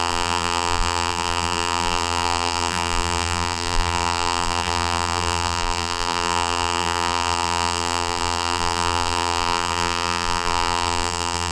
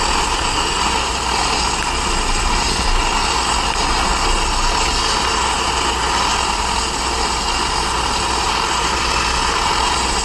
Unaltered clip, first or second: second